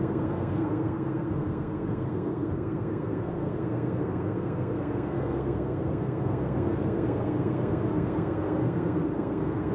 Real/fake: fake